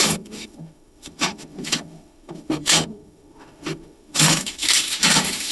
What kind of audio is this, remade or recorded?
remade